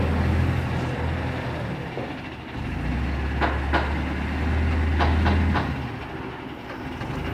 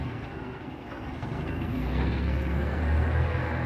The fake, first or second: second